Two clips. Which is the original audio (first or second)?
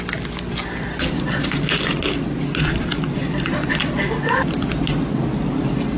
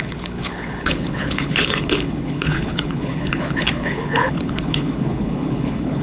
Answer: first